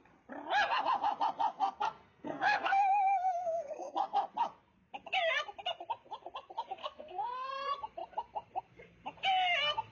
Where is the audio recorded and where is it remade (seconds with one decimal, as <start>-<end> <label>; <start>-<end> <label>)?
0.0-1.5 recorded; 1.5-4.2 remade; 4.2-6.8 recorded; 6.8-7.5 remade; 7.5-9.9 recorded